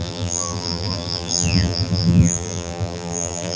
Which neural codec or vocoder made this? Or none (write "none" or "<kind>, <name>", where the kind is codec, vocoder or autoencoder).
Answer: vocoder, BigVGAN v2